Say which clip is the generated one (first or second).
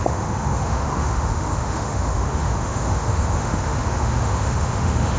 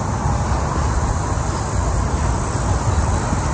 first